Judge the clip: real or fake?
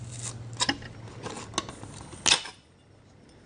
real